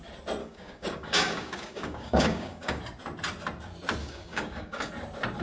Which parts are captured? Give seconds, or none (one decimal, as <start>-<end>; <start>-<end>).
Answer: 0.0-0.4; 2.8-4.0; 4.9-5.4